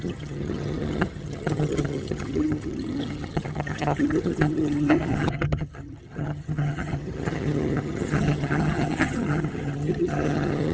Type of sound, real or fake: fake